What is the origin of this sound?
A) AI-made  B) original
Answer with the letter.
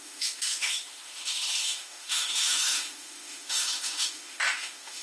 A